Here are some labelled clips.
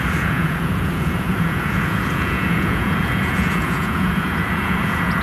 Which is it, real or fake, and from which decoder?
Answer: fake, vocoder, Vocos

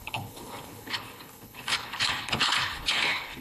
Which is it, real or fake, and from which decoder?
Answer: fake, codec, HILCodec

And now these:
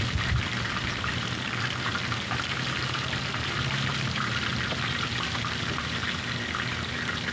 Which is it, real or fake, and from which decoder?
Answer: fake, vocoder, BigVGAN v2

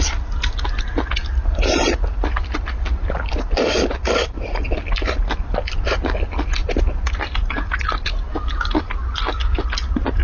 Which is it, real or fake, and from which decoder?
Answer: real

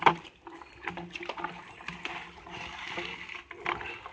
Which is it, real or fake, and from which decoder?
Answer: real